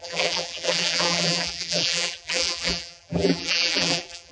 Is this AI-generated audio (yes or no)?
yes